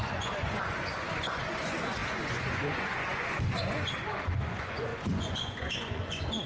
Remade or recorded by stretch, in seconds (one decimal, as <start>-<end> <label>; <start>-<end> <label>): 0.0-6.5 remade